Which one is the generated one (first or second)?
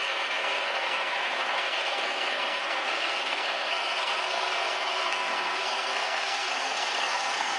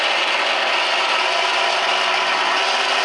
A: first